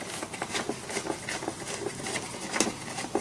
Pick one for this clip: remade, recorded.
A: recorded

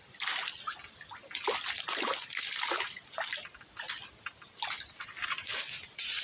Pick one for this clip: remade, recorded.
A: recorded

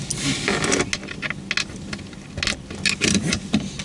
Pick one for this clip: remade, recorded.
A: recorded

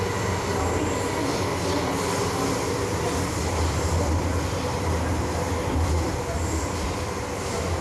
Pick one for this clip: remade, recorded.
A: recorded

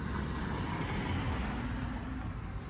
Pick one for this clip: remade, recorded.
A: recorded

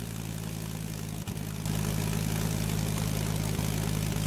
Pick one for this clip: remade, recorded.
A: recorded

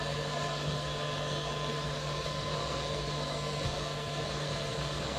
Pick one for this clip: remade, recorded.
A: remade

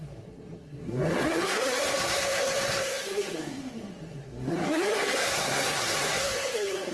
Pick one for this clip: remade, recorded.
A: remade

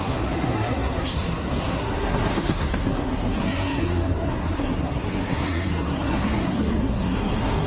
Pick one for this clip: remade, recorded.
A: remade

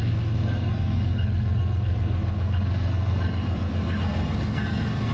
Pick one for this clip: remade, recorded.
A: remade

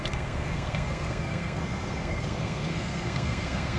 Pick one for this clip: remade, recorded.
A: remade